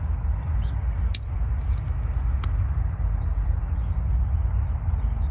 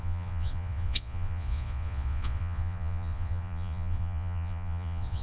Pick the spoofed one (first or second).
second